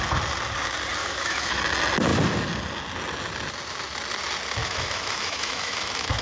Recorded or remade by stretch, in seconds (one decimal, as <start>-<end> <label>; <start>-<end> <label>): 0.0-1.0 recorded; 1.0-1.6 remade; 1.6-4.6 recorded; 4.6-6.2 remade